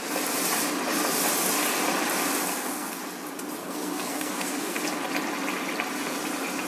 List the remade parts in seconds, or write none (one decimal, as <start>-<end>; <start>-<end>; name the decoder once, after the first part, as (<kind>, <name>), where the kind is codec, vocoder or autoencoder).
2.5-3.0 (codec, SNAC); 3.6-4.8